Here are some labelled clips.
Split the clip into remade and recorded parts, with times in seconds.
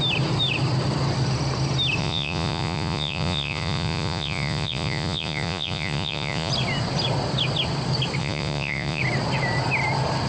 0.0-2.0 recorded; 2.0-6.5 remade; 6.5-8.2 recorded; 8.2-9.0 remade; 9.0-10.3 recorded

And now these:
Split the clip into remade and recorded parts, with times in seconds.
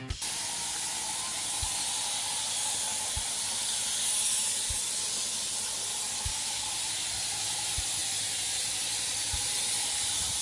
0.0-10.4 recorded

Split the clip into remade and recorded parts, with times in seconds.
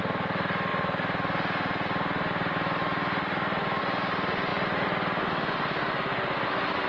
0.0-6.9 recorded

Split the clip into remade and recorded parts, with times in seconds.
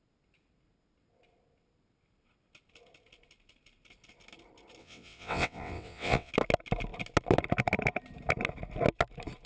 0.0-4.8 recorded; 4.8-6.3 remade; 6.3-9.5 recorded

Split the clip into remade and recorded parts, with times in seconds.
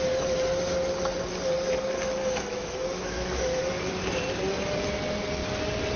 0.0-2.2 recorded; 2.2-3.6 remade; 3.6-6.0 recorded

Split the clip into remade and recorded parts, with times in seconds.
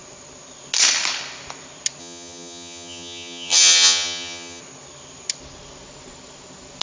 0.0-2.0 recorded; 2.0-4.6 remade; 4.6-6.8 recorded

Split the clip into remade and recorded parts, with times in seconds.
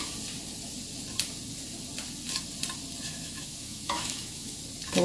0.0-3.1 recorded; 3.1-4.6 remade; 4.6-5.0 recorded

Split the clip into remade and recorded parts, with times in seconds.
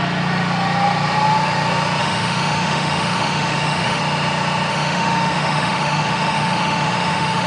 0.0-2.0 recorded; 2.0-4.0 remade; 4.0-4.7 recorded; 4.7-7.5 remade